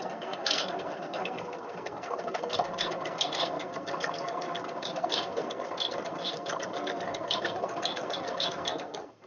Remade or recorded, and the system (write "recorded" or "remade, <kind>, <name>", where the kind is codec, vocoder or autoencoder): remade, codec, SNAC